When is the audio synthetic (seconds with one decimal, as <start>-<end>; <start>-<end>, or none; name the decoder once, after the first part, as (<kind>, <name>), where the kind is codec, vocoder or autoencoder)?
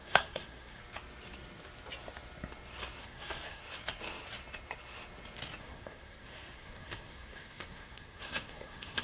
0.0-0.8 (codec, SNAC); 3.0-3.6; 5.6-9.0